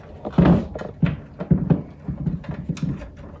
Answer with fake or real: real